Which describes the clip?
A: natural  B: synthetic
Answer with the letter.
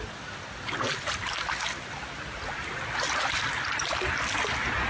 A